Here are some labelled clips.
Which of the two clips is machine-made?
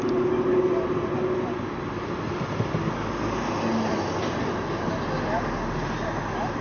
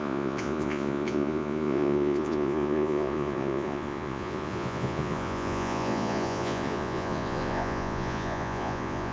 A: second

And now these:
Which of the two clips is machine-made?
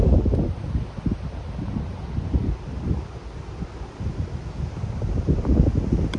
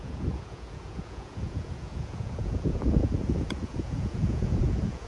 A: second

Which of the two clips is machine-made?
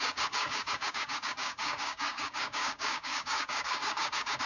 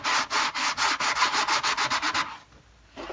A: first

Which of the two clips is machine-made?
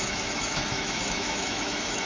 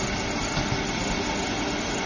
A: first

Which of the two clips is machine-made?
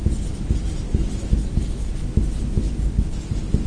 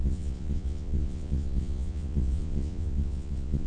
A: second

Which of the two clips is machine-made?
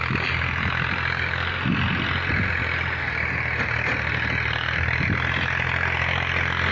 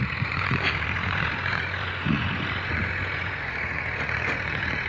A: second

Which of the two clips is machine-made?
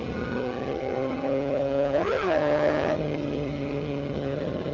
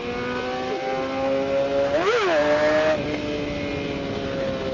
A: first